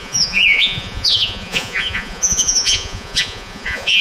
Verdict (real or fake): fake